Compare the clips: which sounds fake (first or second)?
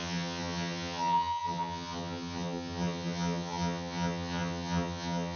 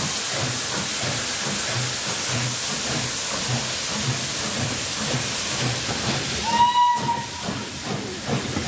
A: first